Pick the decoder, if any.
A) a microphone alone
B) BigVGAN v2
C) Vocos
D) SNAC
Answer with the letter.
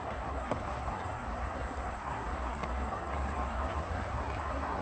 D